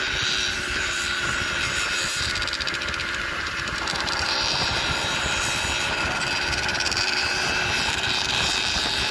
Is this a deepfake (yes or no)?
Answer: yes